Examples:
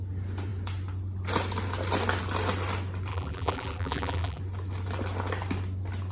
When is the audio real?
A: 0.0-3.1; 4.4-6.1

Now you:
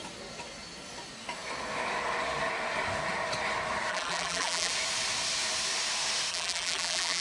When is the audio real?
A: 0.0-3.9; 4.7-6.3

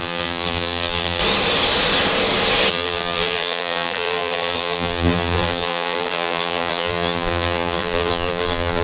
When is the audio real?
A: 1.2-2.7

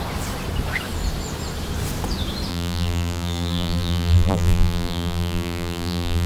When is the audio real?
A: 0.0-2.5